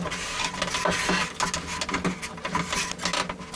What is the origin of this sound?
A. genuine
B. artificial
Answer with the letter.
A